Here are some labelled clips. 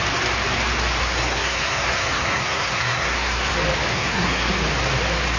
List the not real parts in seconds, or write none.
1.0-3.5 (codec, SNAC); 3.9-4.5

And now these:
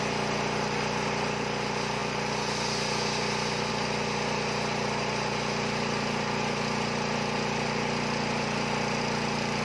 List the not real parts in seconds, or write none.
none

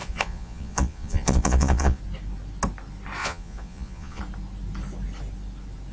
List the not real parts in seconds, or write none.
0.0-2.0 (vocoder, Vocos); 3.2-4.2

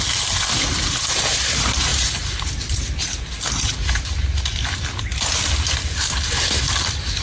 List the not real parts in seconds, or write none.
none